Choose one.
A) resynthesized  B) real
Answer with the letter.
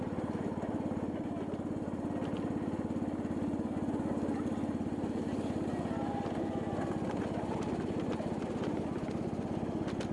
B